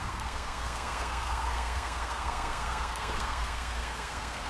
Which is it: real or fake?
fake